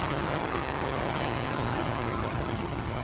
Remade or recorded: remade